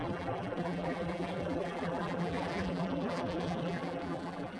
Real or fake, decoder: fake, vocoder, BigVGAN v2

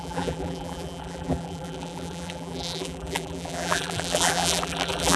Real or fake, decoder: fake, vocoder, BigVGAN v2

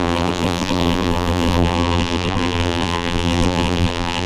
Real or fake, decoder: fake, vocoder, BigVGAN v2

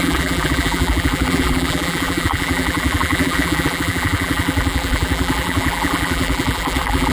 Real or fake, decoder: fake, vocoder, BigVGAN v2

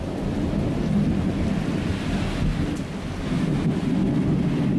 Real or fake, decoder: real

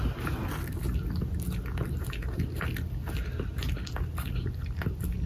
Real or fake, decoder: real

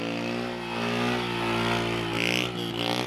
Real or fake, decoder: real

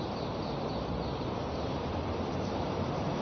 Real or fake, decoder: fake, vocoder, BigVGAN v2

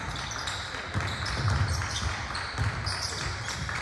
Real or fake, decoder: fake, vocoder, BigVGAN v2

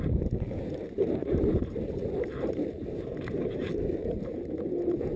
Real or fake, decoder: fake, vocoder, BigVGAN v2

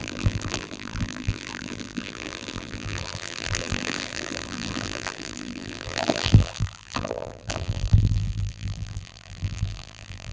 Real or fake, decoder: fake, vocoder, BigVGAN v2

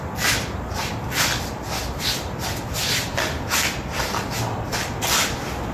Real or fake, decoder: real